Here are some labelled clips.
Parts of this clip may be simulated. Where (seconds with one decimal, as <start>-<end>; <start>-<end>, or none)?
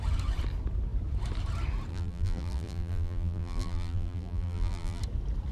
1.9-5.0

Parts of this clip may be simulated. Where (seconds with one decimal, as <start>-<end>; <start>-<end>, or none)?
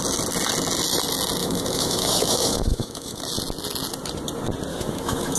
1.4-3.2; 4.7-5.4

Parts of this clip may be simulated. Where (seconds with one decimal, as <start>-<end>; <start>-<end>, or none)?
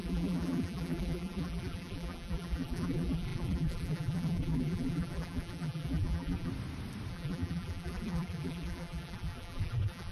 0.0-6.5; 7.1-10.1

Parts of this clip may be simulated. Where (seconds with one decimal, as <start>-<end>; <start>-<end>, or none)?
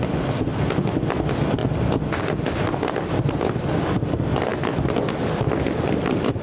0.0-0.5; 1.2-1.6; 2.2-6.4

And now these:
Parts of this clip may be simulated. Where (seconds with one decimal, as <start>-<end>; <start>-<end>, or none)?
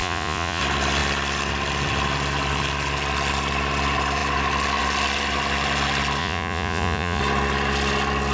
0.0-0.6; 6.2-7.2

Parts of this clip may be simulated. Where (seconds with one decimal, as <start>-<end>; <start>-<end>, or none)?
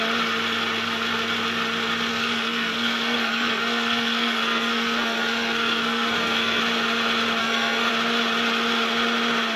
2.1-6.6; 7.4-7.9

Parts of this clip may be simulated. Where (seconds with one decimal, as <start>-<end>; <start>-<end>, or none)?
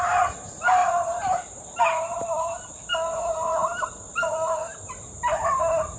0.8-1.8; 3.6-4.6